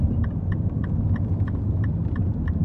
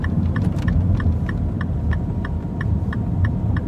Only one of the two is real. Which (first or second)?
second